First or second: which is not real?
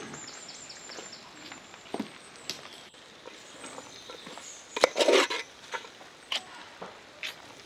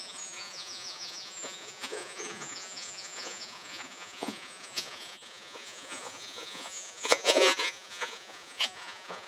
second